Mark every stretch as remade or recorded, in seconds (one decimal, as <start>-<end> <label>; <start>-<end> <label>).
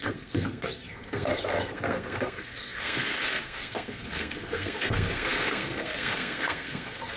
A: 0.0-7.2 remade